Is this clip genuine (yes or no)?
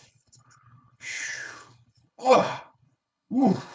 no